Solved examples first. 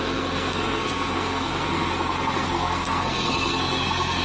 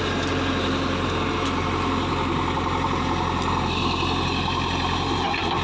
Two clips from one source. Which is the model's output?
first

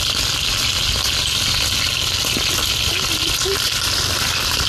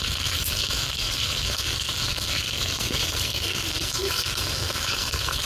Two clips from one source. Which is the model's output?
second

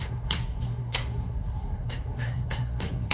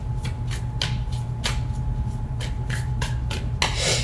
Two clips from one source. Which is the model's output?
first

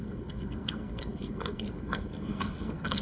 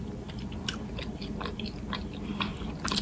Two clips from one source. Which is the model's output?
first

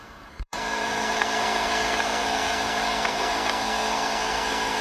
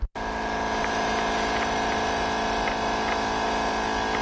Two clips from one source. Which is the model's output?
first